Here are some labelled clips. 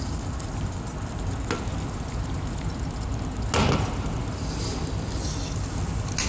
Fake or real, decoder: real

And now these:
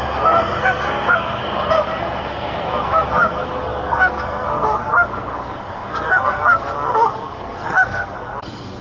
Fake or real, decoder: fake, codec, SNAC